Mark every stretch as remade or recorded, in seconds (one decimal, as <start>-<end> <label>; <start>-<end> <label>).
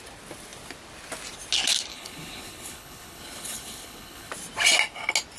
0.0-1.9 recorded; 1.9-4.3 remade; 4.3-5.4 recorded